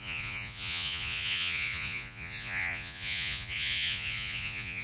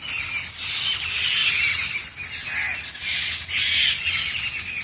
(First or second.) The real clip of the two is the second